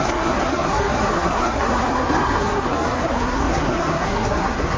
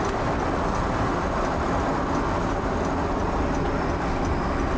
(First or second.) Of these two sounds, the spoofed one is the first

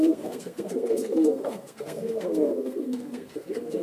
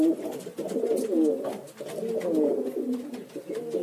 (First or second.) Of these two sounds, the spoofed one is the first